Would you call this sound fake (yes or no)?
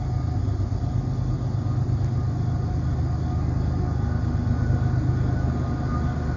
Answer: no